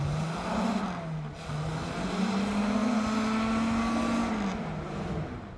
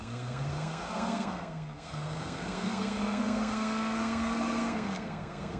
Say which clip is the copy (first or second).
second